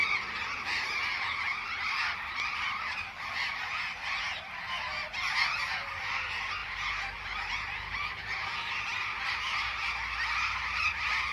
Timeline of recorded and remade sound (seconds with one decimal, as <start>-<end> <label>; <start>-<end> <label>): 0.0-11.3 recorded